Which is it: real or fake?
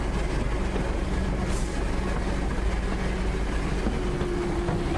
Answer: real